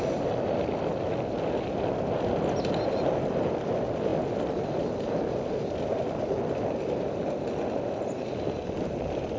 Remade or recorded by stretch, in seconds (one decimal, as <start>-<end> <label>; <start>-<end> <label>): 0.0-9.4 recorded